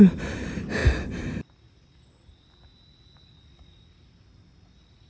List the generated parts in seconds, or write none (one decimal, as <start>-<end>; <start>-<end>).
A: none